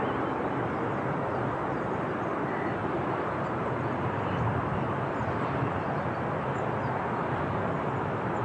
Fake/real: fake